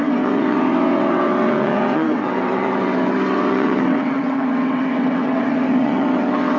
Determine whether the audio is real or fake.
fake